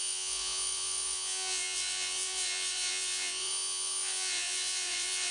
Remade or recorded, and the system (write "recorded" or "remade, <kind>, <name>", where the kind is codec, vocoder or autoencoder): remade, vocoder, Vocos